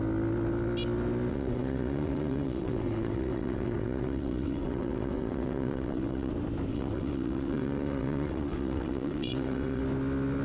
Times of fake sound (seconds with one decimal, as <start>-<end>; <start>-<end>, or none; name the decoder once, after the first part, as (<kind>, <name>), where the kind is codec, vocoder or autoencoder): 1.3-6.3 (vocoder, WaveNeXt); 6.7-9.8